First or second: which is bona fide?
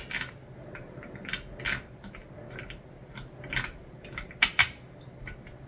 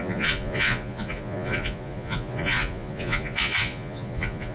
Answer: first